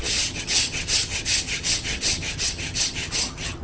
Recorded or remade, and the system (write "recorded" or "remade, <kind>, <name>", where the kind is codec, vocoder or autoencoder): remade, vocoder, HiFi-GAN